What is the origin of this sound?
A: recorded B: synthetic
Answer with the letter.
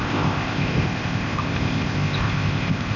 B